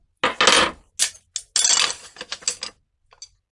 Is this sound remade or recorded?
recorded